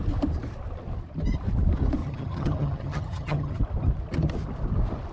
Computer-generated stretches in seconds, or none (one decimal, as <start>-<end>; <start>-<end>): 2.0-3.6